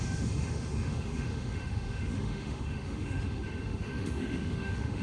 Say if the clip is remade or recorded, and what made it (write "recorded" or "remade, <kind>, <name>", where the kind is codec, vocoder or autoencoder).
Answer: remade, autoencoder, DAC-VAE